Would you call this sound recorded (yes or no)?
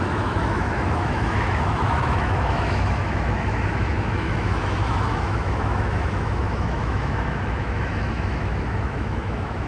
no